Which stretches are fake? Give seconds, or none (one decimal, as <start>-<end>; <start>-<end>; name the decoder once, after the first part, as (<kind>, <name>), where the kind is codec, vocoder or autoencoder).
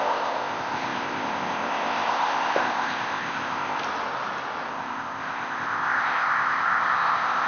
0.0-3.8 (codec, ZipCodec); 4.7-7.5